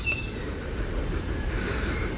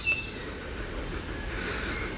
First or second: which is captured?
second